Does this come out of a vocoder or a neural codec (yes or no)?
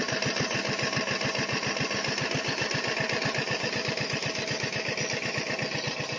no